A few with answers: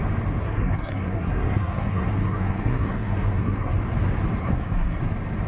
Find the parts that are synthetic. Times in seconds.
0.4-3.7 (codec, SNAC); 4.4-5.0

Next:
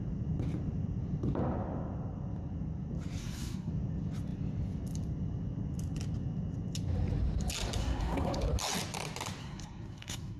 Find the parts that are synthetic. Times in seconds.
3.2-3.7 (codec, SNAC); 7.8-8.4; 9.4-10.4

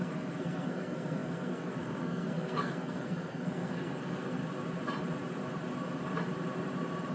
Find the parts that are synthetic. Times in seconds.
0.0-4.4 (codec, SNAC)

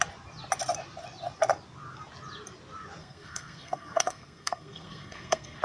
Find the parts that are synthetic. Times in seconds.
3.0-5.6 (codec, SNAC)

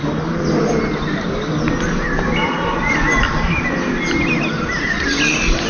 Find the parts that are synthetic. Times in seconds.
none

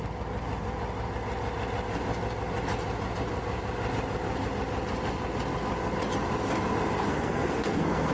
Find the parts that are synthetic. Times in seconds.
7.1-8.1 (codec, SNAC)